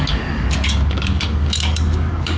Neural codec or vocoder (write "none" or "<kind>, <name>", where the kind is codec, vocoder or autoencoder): codec, DAC